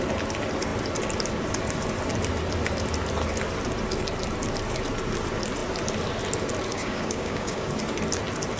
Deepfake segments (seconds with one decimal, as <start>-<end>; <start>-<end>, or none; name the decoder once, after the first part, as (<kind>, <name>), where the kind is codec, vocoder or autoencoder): 6.7-7.7 (codec, DAC)